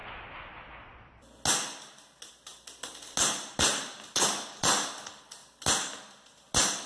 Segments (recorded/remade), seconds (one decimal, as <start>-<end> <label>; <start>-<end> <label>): 0.0-6.9 recorded